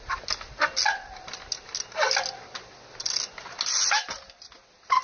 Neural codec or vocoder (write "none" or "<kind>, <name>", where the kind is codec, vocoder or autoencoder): none